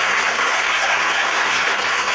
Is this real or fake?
fake